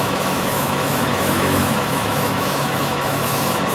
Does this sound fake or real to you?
fake